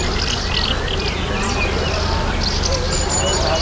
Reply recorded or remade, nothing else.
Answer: recorded